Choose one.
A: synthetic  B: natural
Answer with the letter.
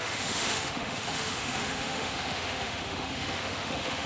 A